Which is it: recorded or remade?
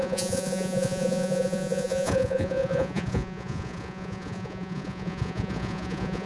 remade